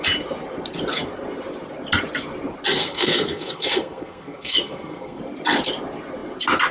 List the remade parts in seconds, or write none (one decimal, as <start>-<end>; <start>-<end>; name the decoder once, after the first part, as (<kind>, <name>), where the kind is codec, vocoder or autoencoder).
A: 2.8-5.2 (codec, SNAC)